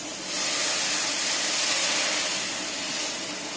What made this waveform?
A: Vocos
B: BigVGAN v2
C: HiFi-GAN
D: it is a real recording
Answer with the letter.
D